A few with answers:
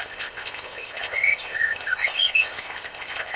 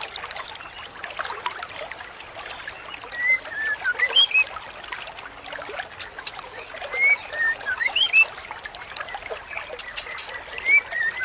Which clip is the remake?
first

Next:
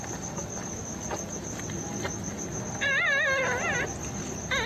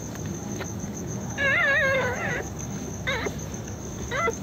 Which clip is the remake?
second